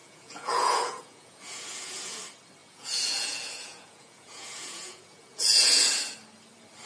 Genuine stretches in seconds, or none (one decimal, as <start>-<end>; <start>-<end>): 2.2-2.6; 5.9-6.9